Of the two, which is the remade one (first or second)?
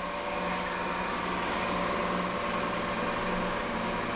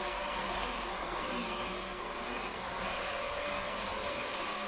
second